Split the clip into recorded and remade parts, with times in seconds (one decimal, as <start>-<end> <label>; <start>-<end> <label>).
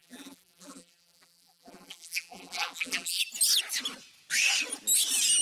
0.0-3.2 remade; 3.2-5.4 recorded